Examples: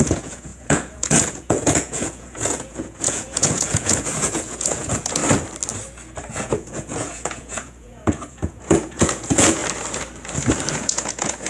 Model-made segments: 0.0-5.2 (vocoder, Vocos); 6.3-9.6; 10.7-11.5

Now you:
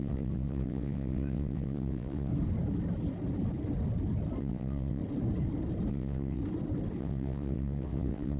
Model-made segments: 0.0-2.3 (vocoder, WaveNeXt); 4.4-5.0; 5.9-6.4; 7.0-8.4

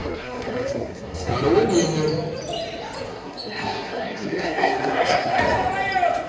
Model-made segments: 0.0-1.3 (codec, SNAC); 3.1-5.4

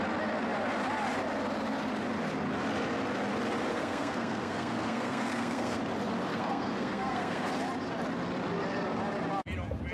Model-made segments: 3.7-5.8 (codec, SNAC); 6.3-7.5

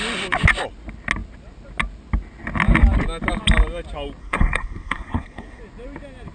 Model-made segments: 4.2-5.6 (codec, SNAC)

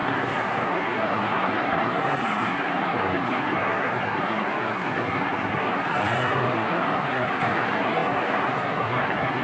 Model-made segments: 0.0-9.4 (codec, SNAC)